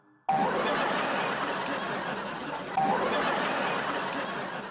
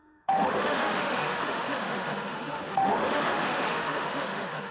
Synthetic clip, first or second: second